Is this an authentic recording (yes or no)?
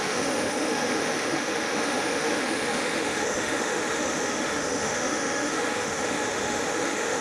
no